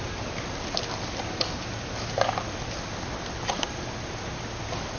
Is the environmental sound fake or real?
real